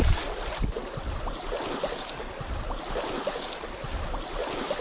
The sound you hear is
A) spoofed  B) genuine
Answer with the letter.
B